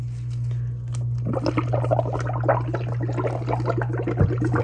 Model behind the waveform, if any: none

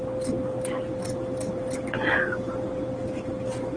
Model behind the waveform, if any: none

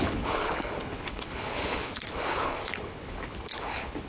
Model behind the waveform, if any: codec, HILCodec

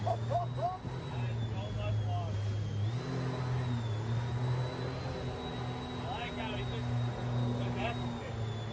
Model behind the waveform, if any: none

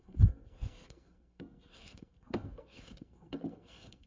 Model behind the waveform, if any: codec, SNAC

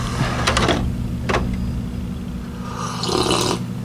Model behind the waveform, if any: none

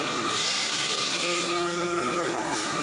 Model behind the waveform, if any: codec, SNAC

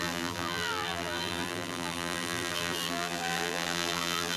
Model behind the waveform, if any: vocoder, BigVGAN v2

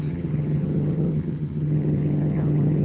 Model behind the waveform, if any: vocoder, HiFi-GAN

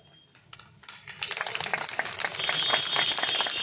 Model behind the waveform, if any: none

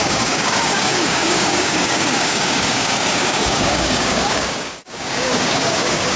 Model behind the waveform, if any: codec, DAC